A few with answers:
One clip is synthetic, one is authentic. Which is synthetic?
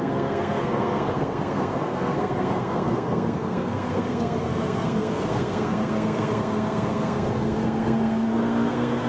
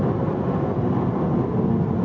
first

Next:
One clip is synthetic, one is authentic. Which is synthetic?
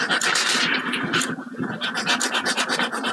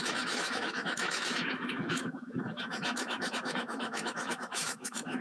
second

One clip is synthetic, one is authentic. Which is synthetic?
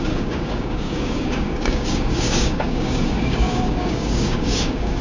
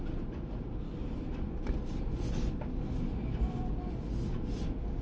first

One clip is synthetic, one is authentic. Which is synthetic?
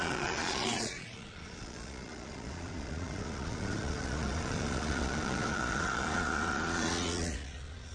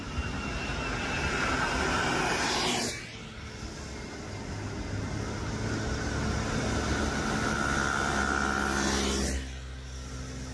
first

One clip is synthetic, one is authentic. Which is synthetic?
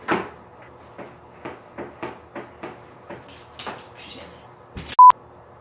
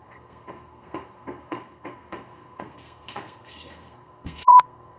second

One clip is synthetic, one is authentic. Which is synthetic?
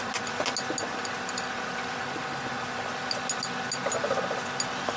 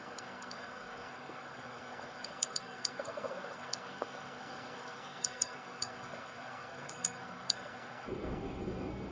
second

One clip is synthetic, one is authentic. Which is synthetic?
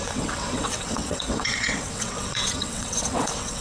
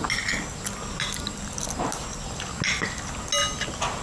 first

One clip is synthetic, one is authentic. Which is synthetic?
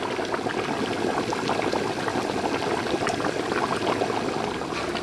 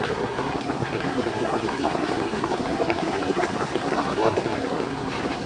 second